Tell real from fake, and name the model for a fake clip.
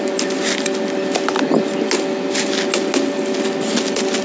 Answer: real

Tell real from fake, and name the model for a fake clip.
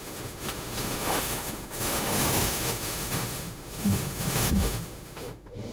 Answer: fake, autoencoder, DAC-VAE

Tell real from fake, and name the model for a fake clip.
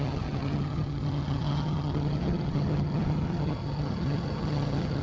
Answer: fake, vocoder, HiFi-GAN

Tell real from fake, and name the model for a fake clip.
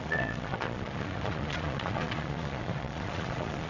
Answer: fake, vocoder, Vocos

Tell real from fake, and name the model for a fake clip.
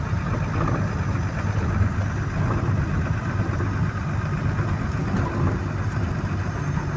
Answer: real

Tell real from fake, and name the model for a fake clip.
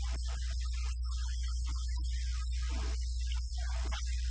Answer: real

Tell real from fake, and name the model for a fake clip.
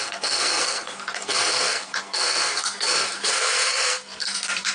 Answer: fake, codec, SNAC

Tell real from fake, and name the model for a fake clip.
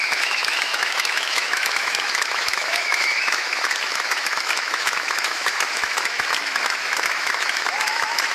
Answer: fake, autoencoder, DAC-VAE